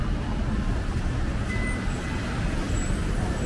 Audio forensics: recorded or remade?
recorded